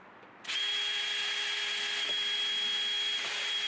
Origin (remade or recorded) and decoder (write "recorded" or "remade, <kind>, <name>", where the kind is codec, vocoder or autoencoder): recorded